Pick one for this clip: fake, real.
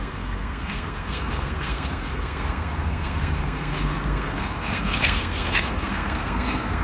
fake